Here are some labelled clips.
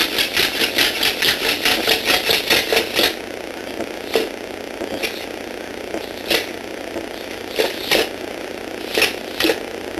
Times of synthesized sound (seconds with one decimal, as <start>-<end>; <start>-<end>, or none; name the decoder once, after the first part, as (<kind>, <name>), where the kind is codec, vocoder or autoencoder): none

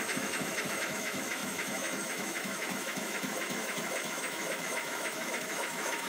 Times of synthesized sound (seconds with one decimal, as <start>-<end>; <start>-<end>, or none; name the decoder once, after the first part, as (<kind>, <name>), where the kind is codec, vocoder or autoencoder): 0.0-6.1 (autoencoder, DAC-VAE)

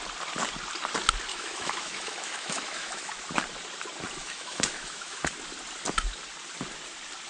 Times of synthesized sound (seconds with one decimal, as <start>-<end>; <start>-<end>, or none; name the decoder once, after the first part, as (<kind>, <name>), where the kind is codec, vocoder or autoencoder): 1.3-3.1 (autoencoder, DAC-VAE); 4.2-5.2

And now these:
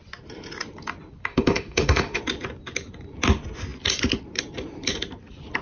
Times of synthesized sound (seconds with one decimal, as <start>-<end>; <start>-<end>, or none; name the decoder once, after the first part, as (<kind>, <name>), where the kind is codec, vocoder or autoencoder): 1.3-2.2 (autoencoder, DAC-VAE)

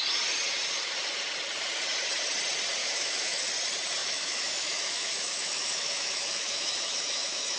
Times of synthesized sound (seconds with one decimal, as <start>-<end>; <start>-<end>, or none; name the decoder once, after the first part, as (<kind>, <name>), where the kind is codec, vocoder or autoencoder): 2.8-3.4 (autoencoder, DAC-VAE); 4.0-7.6

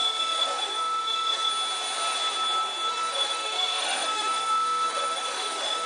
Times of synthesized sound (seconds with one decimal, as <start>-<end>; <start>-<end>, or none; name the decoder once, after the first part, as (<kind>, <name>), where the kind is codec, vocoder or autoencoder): 0.0-1.5 (autoencoder, DAC-VAE); 2.9-5.9